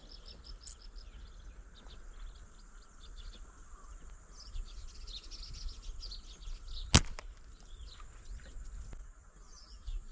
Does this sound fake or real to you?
real